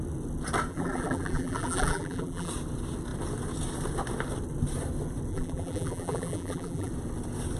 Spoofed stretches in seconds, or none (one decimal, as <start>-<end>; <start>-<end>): 0.7-2.5; 5.3-6.9